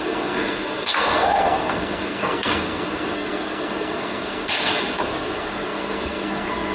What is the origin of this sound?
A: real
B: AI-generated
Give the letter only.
B